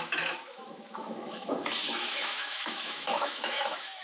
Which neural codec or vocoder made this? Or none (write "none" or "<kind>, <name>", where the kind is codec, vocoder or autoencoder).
autoencoder, DAC-VAE